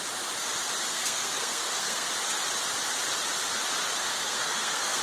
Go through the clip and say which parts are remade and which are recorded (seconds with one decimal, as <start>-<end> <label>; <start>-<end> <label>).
0.0-0.9 recorded; 0.9-2.1 remade; 2.1-4.1 recorded; 4.1-5.0 remade